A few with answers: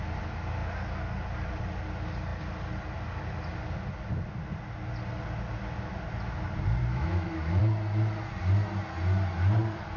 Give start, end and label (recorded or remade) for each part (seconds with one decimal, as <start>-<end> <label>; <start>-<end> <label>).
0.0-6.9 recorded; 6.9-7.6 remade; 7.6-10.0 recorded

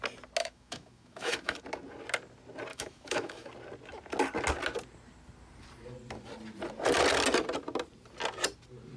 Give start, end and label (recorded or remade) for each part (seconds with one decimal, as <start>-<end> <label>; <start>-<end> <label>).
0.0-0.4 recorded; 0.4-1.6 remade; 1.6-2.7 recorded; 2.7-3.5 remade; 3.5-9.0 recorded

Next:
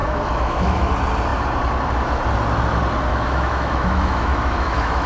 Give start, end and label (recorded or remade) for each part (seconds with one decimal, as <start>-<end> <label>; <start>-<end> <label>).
0.0-0.9 remade; 0.9-3.1 recorded; 3.1-5.1 remade

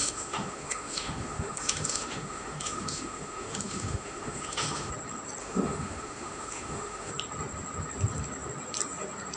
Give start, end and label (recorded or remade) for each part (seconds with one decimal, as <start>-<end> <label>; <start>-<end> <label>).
0.0-4.9 remade; 4.9-5.4 recorded; 5.4-7.1 remade; 7.1-9.4 recorded

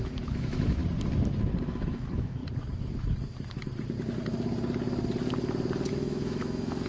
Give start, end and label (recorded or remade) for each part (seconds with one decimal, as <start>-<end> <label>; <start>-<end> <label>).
0.0-0.8 remade; 0.8-1.6 recorded; 1.6-2.4 remade; 2.4-5.9 recorded; 5.9-6.9 remade